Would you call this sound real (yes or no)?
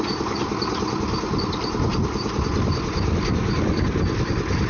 yes